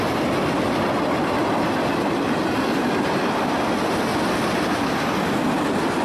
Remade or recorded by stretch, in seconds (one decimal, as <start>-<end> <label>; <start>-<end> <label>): 0.0-4.1 recorded; 4.1-5.1 remade; 5.1-6.0 recorded